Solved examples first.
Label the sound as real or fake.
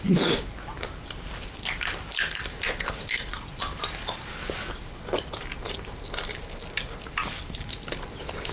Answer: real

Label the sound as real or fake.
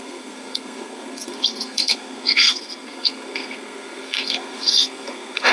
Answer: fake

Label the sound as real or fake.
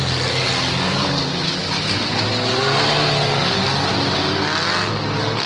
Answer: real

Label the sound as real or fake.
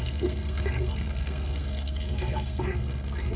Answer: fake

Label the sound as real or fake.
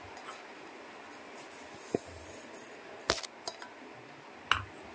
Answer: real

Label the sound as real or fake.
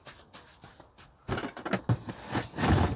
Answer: real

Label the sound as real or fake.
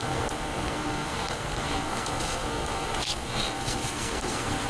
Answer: fake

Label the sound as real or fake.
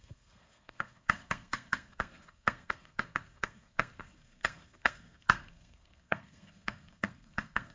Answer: fake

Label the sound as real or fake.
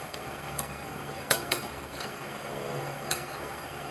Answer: fake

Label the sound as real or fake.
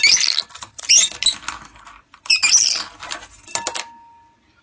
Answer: real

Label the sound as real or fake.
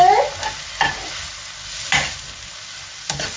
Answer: real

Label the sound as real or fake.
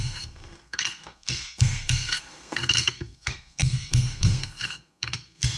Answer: fake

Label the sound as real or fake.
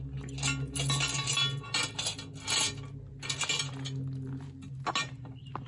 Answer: real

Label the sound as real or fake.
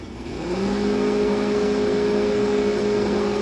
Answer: fake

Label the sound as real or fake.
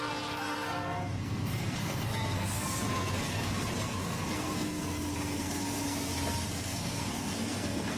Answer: fake